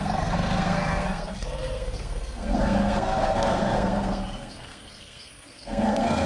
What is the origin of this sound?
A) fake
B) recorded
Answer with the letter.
A